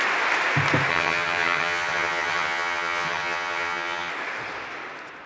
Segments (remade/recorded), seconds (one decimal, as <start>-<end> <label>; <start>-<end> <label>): 0.0-0.9 recorded; 0.9-4.1 remade; 4.1-5.3 recorded